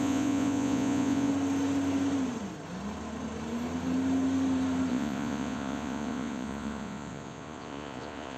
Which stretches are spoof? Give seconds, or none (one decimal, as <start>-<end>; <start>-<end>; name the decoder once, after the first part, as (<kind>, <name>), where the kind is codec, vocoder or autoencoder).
0.0-1.3 (vocoder, Vocos); 4.9-8.4